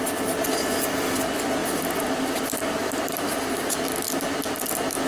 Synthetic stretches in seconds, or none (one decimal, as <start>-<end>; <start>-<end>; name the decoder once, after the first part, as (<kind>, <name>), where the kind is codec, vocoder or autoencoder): 2.8-3.7 (vocoder, BigVGAN v2)